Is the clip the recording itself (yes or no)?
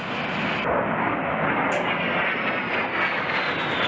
yes